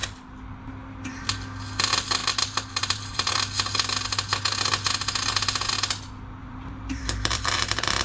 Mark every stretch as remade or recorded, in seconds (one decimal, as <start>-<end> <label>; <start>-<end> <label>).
0.0-2.2 recorded; 2.2-3.3 remade; 3.3-6.4 recorded; 6.4-8.0 remade